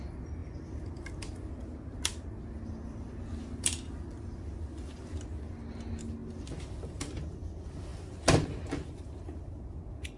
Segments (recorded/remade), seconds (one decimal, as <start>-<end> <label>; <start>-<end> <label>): 0.0-10.2 recorded